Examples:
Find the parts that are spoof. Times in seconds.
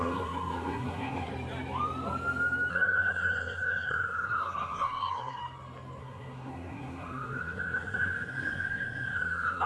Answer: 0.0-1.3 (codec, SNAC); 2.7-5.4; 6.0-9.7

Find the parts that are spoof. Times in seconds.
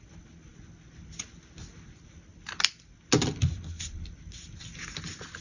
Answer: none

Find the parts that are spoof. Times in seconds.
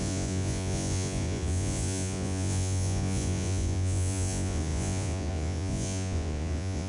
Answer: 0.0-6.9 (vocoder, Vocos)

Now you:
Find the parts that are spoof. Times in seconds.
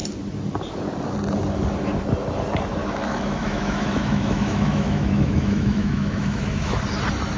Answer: 2.8-6.8 (autoencoder, DAC-VAE)